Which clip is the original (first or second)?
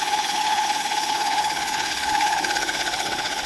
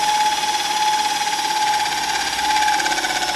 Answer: second